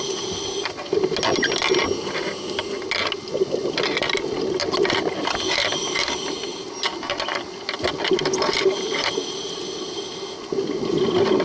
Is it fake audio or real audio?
real